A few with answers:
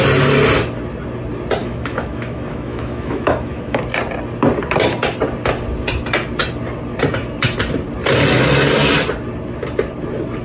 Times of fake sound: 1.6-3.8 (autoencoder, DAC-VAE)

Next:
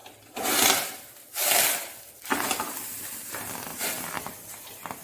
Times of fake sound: none

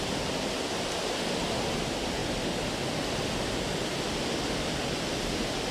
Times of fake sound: none

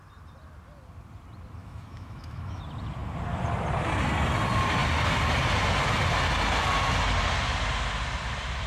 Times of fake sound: 1.6-2.6 (autoencoder, DAC-VAE)

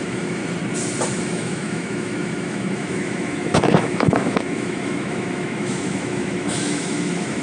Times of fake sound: 0.0-0.4 (autoencoder, DAC-VAE); 1.2-7.4